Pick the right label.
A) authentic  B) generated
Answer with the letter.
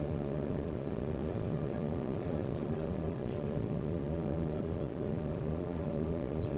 B